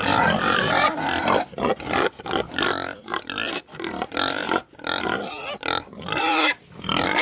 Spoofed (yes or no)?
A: yes